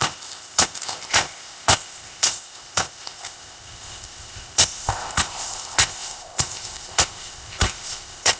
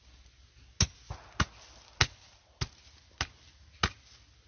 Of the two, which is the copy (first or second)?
first